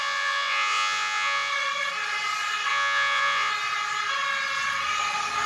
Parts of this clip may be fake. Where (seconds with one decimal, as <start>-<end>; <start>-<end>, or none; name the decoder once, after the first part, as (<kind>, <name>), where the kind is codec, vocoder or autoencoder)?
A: 0.0-1.5 (vocoder, Vocos); 2.7-3.5